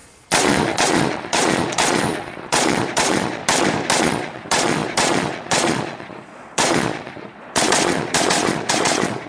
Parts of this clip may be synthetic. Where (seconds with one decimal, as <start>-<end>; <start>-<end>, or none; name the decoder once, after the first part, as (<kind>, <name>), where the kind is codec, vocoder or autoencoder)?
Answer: 0.0-3.4 (vocoder, Vocos); 4.0-9.3